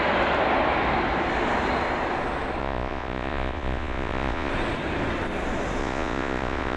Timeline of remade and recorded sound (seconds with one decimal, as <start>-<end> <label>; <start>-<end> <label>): 0.0-2.6 recorded; 2.6-4.5 remade; 4.5-5.8 recorded; 5.8-6.8 remade